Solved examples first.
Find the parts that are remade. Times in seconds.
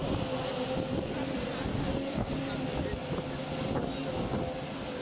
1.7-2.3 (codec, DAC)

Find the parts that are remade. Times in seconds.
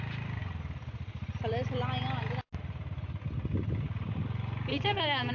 4.7-5.3 (codec, SNAC)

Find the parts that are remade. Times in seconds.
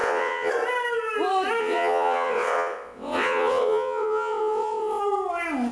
0.0-0.5 (vocoder, WaveNeXt); 1.6-5.0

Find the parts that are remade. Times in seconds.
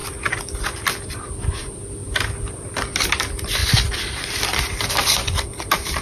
none